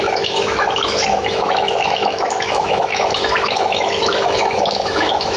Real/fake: fake